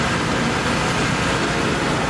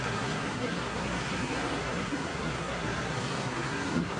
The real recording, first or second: first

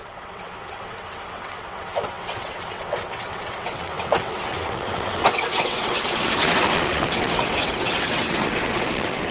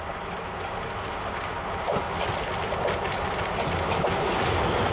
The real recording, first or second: second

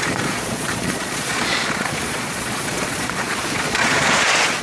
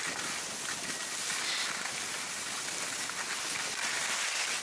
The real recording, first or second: second